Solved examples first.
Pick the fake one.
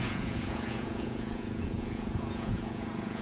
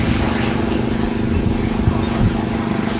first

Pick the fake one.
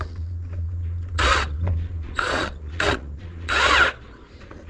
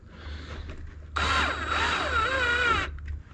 first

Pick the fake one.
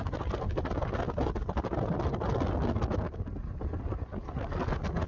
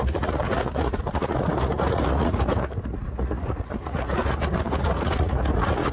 second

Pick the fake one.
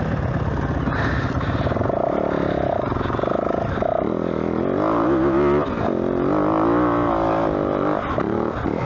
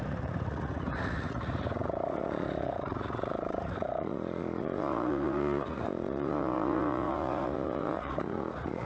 second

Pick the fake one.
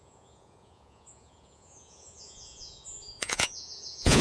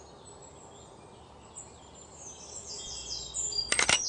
first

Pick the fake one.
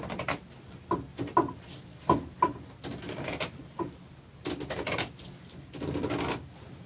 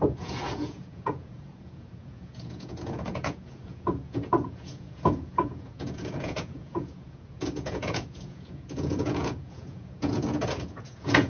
second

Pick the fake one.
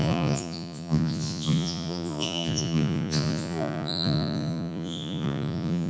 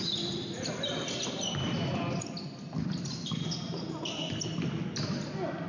first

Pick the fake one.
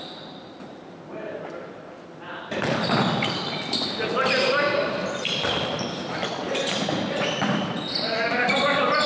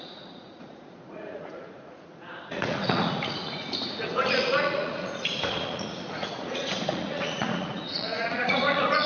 second